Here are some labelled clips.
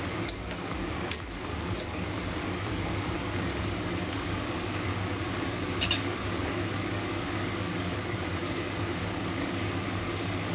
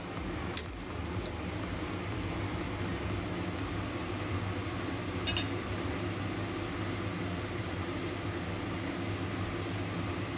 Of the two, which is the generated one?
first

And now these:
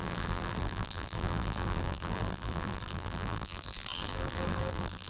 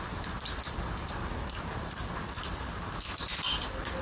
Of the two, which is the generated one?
first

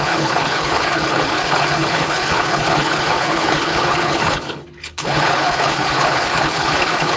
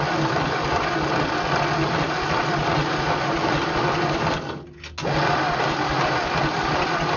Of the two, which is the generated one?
first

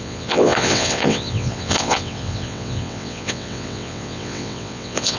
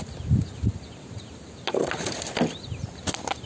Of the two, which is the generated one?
first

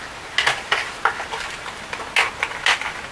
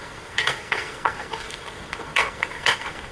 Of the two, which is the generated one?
second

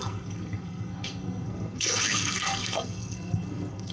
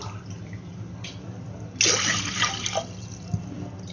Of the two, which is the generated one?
first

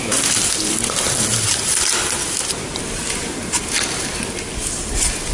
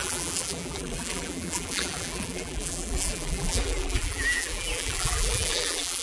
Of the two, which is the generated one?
second